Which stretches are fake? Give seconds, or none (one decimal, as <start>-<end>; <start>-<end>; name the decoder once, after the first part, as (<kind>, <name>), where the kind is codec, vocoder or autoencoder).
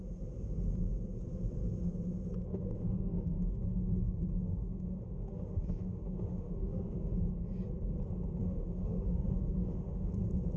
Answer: 2.5-7.3 (autoencoder, DAC-VAE); 8.4-10.1